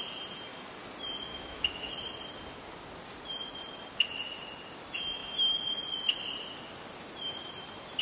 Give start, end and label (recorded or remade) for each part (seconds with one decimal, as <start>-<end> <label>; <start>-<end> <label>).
0.0-1.3 recorded; 1.3-1.9 remade; 1.9-8.0 recorded